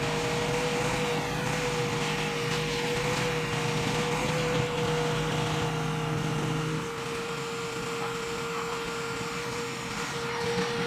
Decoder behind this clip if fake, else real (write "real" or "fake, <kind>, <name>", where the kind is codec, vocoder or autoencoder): real